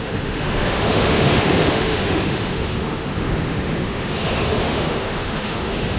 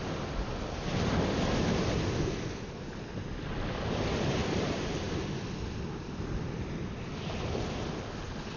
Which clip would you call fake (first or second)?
first